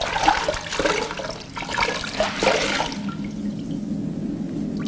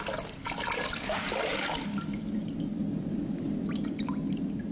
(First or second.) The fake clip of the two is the second